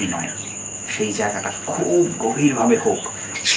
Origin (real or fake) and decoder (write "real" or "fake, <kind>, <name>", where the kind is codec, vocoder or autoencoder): fake, autoencoder, DAC-VAE